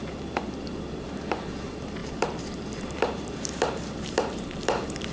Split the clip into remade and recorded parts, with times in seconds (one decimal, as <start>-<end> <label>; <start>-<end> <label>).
0.0-5.1 remade